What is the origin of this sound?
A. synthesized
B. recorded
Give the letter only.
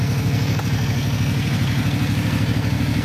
A